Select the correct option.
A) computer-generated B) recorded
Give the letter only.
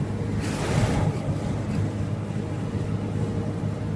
B